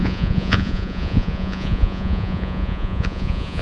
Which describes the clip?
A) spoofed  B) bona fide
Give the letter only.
A